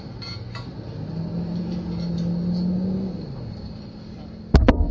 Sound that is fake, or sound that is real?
real